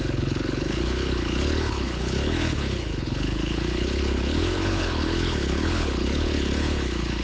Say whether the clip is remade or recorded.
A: remade